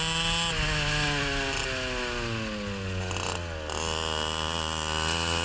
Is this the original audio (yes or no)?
yes